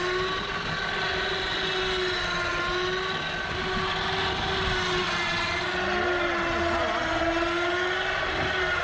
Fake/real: real